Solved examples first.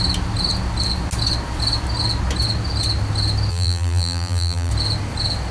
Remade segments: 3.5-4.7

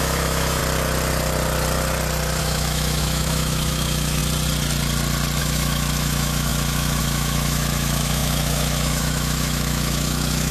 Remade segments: 0.0-0.6; 2.4-4.2; 5.4-10.5

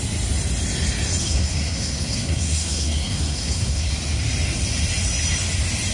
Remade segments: 1.2-3.9

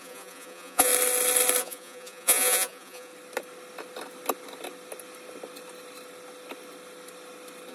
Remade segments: 0.0-0.9; 1.6-3.1